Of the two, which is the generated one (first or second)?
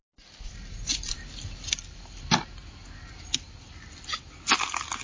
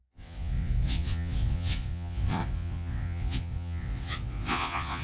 second